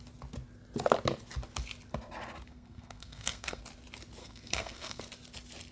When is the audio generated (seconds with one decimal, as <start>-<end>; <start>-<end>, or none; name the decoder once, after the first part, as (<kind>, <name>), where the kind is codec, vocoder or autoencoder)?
2.5-3.6 (codec, SNAC); 4.2-5.0